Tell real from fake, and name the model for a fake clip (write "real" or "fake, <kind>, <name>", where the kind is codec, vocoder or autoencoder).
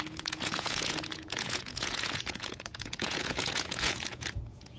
fake, vocoder, Vocos